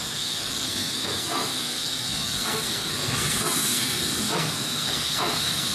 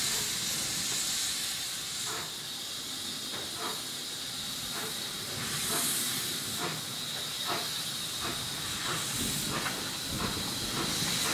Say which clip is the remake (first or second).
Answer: first